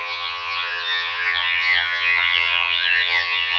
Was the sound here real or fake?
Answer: fake